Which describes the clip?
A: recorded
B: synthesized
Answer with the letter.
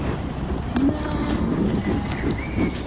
A